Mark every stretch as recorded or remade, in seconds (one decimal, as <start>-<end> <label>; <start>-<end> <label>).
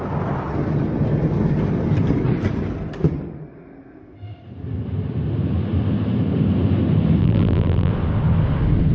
0.0-7.2 recorded; 7.2-7.9 remade; 7.9-8.9 recorded